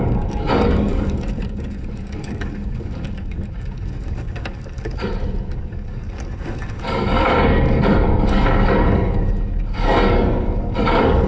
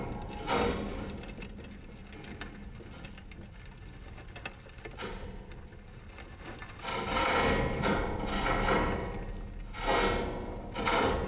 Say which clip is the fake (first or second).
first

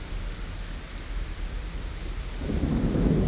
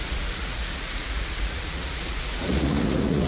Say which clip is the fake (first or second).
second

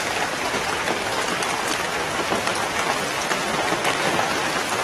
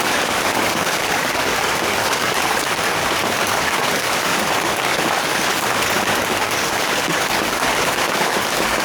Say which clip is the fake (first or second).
second